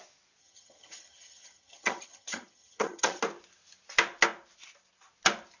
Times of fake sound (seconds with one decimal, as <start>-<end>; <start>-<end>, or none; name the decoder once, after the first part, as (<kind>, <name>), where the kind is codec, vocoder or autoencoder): 0.4-3.2 (vocoder, HiFi-GAN)